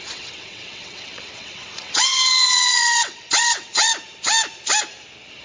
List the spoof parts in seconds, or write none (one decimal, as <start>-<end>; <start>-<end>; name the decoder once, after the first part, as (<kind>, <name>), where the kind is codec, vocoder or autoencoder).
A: 0.0-3.9 (vocoder, WaveNeXt)